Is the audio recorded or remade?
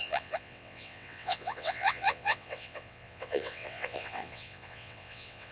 remade